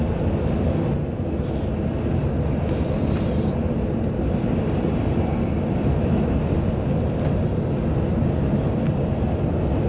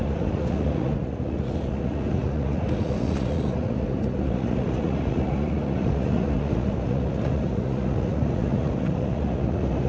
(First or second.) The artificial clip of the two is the second